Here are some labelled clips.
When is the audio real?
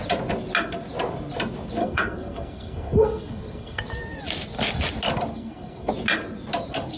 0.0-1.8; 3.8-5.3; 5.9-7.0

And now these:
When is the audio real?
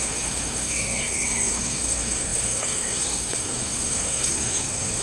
none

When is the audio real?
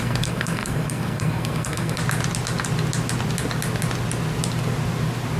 2.0-5.4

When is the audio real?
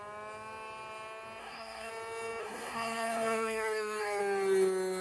0.0-1.4; 1.9-2.4; 4.2-5.0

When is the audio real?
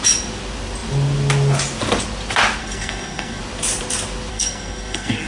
0.0-2.6; 3.4-4.3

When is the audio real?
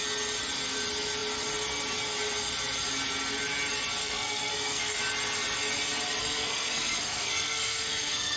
0.0-4.0; 5.0-6.2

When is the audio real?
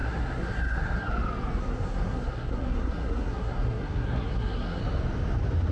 1.1-1.6; 4.8-5.7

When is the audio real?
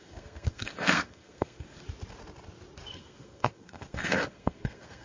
1.8-2.9